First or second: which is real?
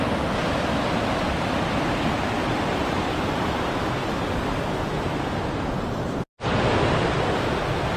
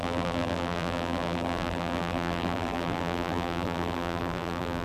first